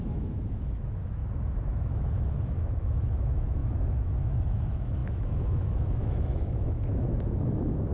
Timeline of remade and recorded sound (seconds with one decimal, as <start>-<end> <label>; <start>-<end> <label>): 0.0-1.2 remade; 1.2-1.8 recorded; 1.8-7.9 remade